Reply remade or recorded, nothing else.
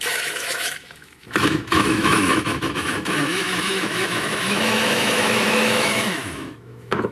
remade